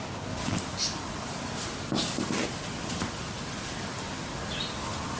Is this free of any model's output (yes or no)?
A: yes